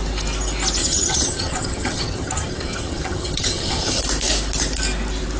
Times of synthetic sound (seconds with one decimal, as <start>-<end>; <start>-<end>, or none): 0.8-4.0